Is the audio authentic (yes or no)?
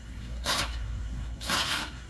no